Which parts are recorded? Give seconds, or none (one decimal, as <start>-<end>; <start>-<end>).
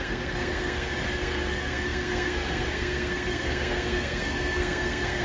none